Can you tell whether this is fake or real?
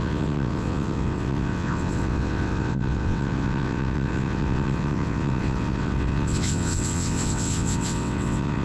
fake